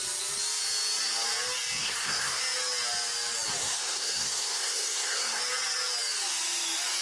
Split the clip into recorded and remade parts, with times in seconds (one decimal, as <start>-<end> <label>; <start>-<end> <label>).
0.0-1.8 recorded; 1.8-2.4 remade; 2.4-3.6 recorded; 3.6-5.4 remade; 5.4-7.0 recorded